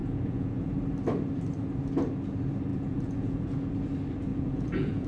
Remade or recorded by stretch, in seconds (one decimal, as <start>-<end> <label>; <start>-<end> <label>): 0.0-0.6 remade; 0.6-2.7 recorded; 2.7-3.7 remade; 3.7-4.3 recorded; 4.3-5.1 remade